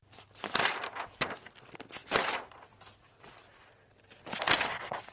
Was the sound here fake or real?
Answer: real